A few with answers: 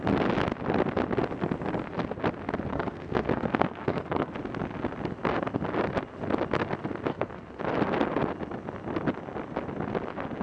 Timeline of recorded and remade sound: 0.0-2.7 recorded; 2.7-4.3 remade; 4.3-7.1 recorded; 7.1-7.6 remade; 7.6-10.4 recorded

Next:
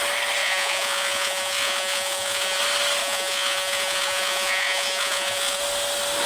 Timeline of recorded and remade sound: 0.0-0.4 recorded; 0.4-2.6 remade; 2.6-3.0 recorded; 3.0-5.6 remade; 5.6-6.3 recorded